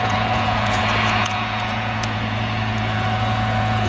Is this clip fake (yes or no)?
yes